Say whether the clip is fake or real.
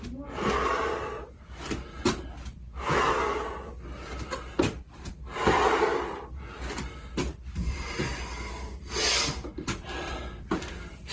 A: real